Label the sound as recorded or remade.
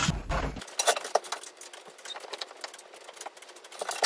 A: recorded